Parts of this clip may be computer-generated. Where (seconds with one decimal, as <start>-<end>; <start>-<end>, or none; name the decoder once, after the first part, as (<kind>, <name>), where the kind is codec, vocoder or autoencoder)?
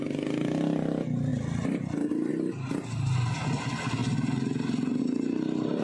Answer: none